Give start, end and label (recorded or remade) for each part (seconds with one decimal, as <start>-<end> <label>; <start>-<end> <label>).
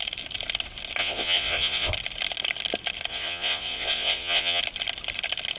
0.0-1.0 recorded; 1.0-1.9 remade; 1.9-3.1 recorded; 3.1-4.6 remade; 4.6-5.6 recorded